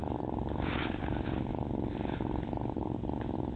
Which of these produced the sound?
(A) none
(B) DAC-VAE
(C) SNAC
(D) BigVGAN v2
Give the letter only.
A